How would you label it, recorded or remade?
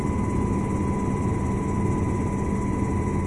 recorded